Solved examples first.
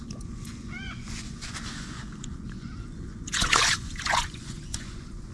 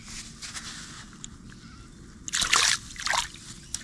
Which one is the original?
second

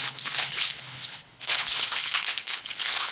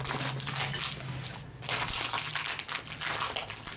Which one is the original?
second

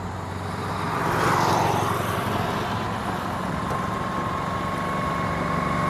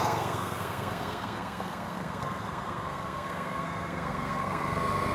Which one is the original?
first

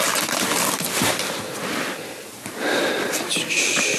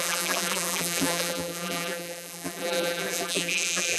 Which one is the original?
first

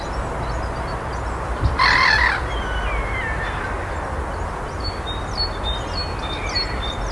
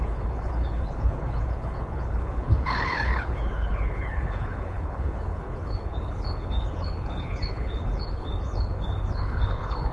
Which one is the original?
first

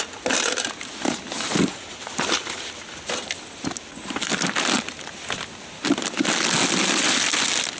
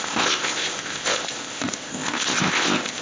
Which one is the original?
first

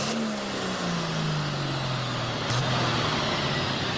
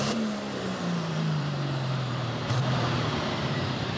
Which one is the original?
first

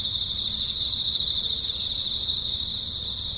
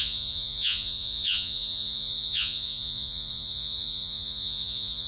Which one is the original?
first